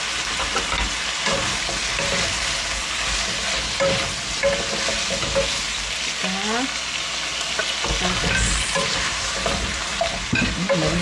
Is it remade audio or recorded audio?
recorded